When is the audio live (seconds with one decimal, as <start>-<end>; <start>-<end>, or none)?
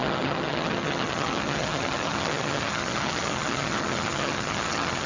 none